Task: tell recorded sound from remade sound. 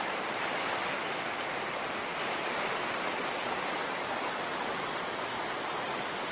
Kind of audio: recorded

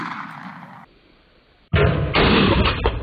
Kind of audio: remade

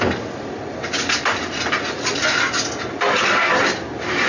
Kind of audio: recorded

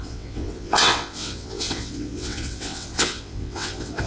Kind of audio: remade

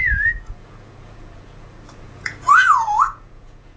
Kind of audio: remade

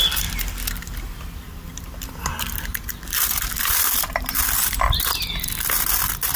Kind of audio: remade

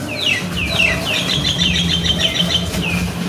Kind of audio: recorded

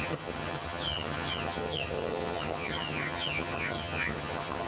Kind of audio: remade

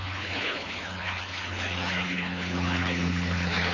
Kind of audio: remade